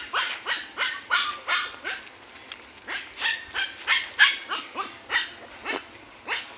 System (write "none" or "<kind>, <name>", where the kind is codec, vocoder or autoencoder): none